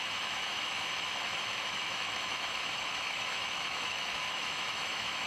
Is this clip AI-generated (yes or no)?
yes